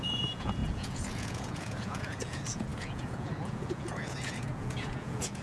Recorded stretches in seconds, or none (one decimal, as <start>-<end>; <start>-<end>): none